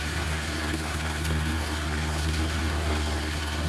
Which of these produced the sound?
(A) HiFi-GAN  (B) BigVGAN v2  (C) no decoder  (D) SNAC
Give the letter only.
D